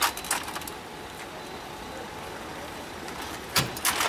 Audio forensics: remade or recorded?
recorded